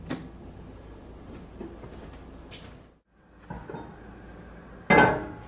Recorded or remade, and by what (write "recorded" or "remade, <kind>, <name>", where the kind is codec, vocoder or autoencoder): recorded